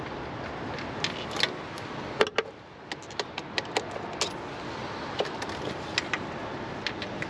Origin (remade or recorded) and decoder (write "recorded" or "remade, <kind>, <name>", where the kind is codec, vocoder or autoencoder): recorded